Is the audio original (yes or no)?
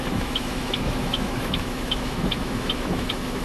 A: no